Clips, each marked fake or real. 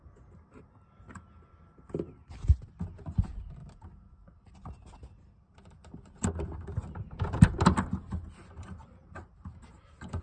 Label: real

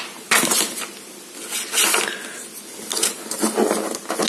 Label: real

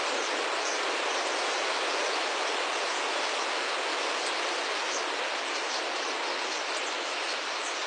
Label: real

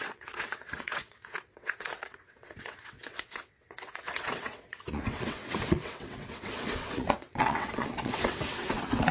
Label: fake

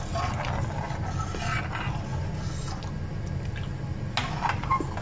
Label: real